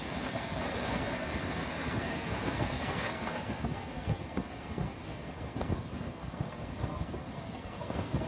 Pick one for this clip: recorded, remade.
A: remade